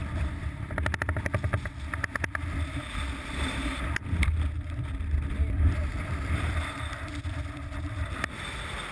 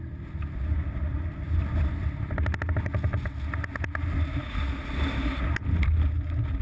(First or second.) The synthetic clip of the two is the first